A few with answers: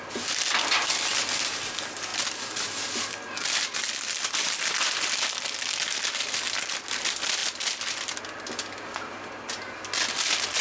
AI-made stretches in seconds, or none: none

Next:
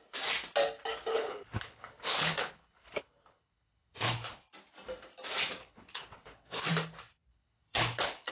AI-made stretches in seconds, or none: 1.1-4.4; 5.6-6.7; 7.3-8.3

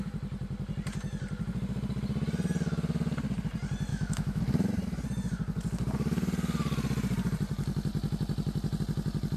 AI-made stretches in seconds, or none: 3.9-4.4

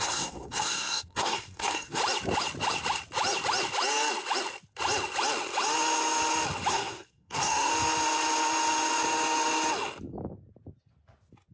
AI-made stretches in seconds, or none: 0.0-2.0; 6.7-7.7

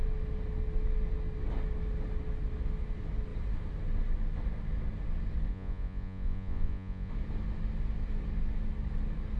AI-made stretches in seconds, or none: 5.5-7.1

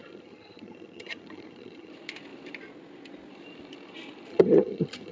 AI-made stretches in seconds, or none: 0.0-1.9; 4.3-5.1

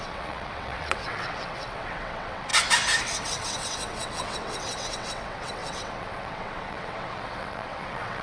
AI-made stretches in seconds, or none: 0.0-2.5; 3.0-8.2

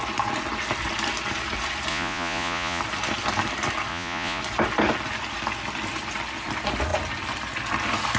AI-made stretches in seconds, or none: 1.9-2.8; 3.9-4.4